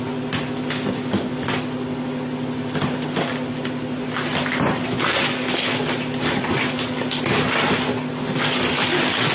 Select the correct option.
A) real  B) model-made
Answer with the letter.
A